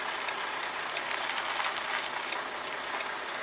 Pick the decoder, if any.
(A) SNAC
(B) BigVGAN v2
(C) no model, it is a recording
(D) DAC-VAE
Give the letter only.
C